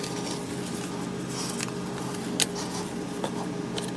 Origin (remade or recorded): recorded